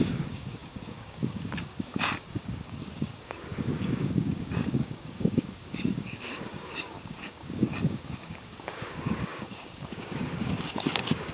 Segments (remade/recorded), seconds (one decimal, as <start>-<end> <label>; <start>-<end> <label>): 0.0-11.3 remade